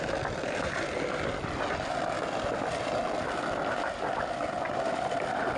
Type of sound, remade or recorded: recorded